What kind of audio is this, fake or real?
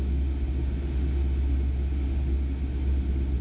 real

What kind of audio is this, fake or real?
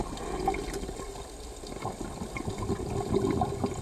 real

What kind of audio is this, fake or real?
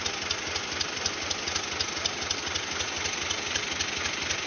real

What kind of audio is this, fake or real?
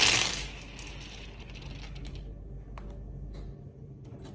real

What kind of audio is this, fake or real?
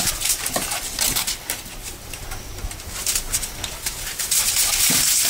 real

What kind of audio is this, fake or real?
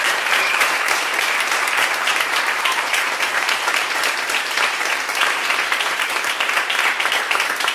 fake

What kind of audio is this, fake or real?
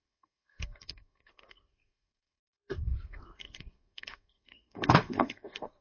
fake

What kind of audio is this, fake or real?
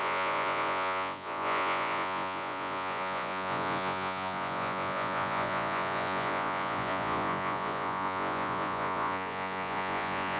fake